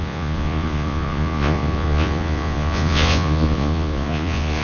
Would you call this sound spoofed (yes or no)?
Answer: yes